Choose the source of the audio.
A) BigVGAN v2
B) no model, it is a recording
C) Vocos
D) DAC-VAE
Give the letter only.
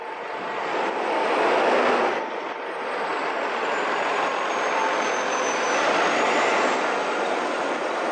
B